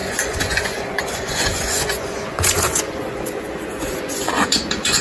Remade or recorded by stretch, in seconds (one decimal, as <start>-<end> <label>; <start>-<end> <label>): 0.0-5.0 remade